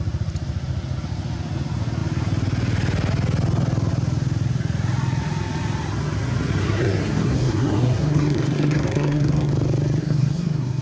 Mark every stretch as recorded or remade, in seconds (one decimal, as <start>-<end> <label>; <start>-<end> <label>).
0.0-6.6 recorded; 6.6-9.5 remade; 9.5-10.0 recorded; 10.0-10.8 remade